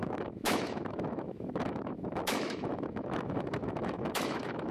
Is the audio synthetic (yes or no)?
yes